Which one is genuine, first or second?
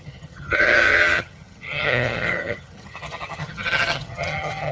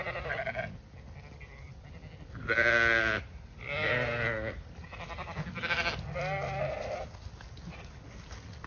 second